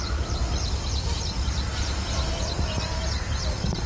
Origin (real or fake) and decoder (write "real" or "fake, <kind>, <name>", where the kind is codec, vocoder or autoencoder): real